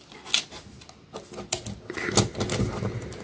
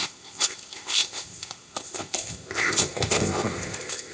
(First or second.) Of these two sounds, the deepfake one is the second